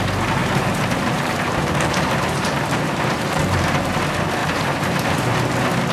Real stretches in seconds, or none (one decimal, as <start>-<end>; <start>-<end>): 0.0-0.4; 3.9-4.4; 5.4-5.9